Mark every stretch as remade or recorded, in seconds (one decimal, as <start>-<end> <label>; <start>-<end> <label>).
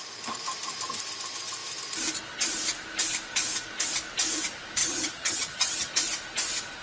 0.0-4.8 recorded; 4.8-5.9 remade; 5.9-6.8 recorded